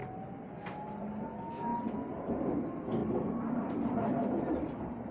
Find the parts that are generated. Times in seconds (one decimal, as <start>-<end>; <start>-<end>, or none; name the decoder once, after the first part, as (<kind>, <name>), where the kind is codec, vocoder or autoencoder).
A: none